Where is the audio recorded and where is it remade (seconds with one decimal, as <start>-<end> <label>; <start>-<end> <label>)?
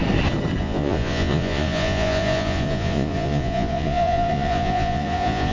0.0-0.6 recorded; 0.6-5.5 remade